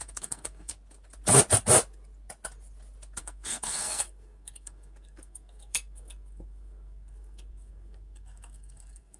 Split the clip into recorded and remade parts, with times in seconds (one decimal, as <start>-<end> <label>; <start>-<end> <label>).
0.0-0.7 remade; 0.7-3.2 recorded; 3.2-9.2 remade